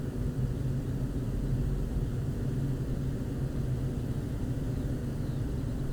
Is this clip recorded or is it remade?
recorded